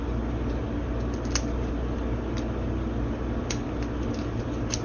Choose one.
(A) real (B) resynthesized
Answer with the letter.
A